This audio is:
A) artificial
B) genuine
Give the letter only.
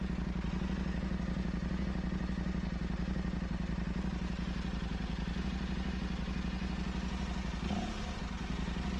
B